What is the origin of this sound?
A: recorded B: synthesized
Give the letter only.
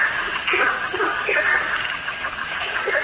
B